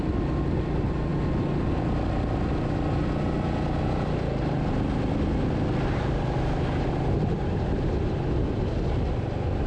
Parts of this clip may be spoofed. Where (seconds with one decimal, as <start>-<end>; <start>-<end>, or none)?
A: none

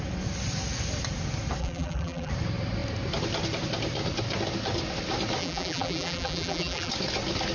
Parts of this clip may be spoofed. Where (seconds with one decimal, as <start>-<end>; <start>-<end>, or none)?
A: 1.6-2.3; 5.4-6.9

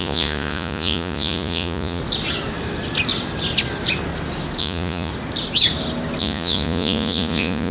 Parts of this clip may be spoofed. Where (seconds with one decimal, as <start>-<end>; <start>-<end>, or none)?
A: 0.0-2.0; 4.6-5.1; 6.2-7.7